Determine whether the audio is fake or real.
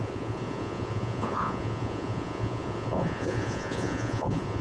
fake